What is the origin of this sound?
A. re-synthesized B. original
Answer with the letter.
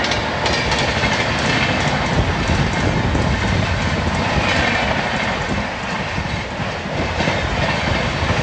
B